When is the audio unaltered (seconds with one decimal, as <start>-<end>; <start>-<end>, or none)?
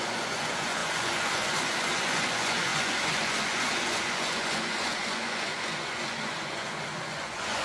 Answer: none